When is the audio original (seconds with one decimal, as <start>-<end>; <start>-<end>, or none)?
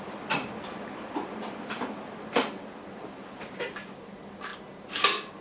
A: 4.5-5.4